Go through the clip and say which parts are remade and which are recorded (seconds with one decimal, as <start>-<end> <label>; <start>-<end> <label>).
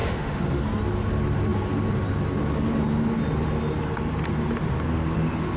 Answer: 0.0-0.6 remade; 0.6-5.6 recorded